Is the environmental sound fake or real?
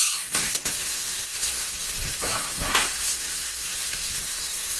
fake